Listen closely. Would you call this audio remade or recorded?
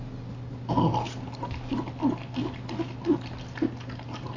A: recorded